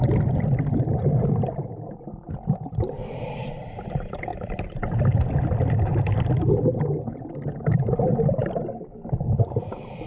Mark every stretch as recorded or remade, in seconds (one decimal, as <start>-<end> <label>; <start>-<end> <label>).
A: 0.0-4.3 remade; 4.3-5.0 recorded; 5.0-5.9 remade; 5.9-7.2 recorded; 7.2-8.4 remade; 8.4-9.2 recorded; 9.2-10.1 remade